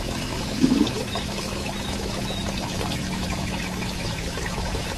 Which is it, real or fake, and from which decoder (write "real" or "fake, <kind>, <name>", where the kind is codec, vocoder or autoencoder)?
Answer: fake, autoencoder, DAC-VAE